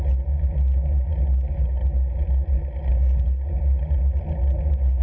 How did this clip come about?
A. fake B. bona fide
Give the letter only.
B